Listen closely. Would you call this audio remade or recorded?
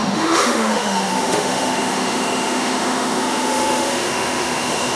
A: remade